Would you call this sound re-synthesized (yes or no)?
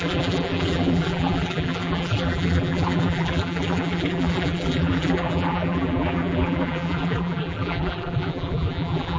yes